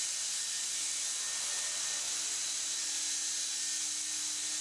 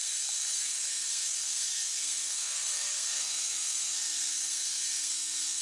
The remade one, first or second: second